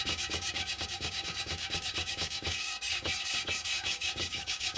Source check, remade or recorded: remade